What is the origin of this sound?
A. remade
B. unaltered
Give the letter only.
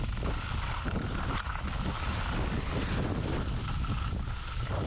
B